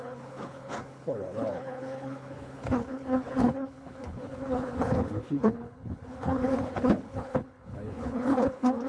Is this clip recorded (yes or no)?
no